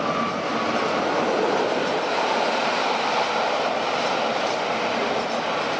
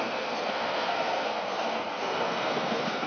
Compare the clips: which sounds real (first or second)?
first